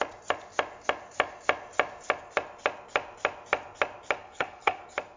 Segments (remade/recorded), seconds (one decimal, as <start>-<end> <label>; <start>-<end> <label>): 0.0-4.2 recorded; 4.2-4.8 remade; 4.8-5.2 recorded